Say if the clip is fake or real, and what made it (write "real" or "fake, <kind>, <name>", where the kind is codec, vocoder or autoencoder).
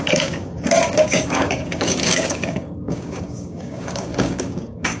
fake, codec, DAC